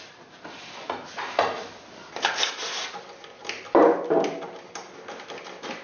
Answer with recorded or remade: recorded